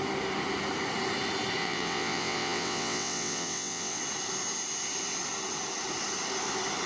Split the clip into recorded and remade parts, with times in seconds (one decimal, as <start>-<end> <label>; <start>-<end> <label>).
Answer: 0.0-1.6 recorded; 1.6-4.0 remade; 4.0-6.9 recorded